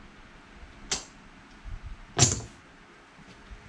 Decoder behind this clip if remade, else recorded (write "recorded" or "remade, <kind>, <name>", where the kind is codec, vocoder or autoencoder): recorded